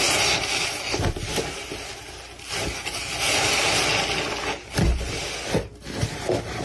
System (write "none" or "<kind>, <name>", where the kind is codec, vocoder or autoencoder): none